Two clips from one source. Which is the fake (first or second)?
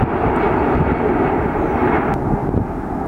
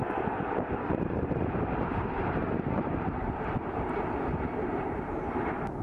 second